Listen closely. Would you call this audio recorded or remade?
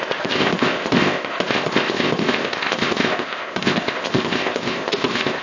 remade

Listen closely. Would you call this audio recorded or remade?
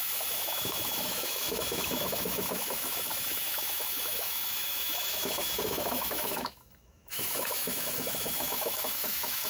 remade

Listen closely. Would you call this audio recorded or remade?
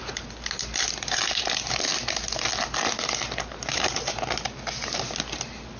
recorded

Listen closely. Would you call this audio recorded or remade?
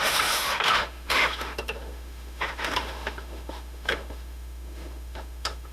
remade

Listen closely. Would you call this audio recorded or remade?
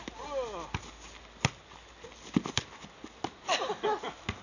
recorded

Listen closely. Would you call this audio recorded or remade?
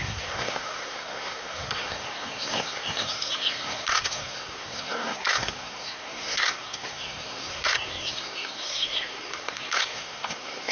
remade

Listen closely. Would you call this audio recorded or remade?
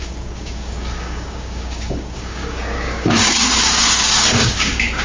remade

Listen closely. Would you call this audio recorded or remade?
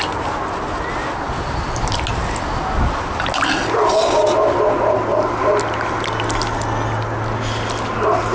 recorded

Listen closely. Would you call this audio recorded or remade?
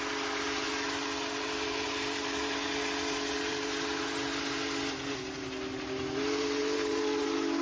recorded